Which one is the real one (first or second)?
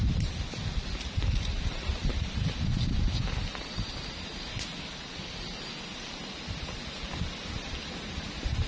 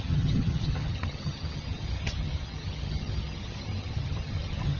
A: first